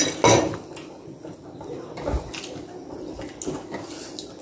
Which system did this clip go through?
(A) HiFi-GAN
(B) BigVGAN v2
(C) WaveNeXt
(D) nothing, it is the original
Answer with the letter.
D